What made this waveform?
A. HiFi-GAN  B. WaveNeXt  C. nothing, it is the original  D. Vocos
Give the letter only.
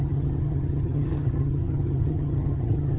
A